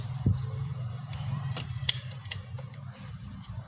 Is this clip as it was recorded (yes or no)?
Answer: no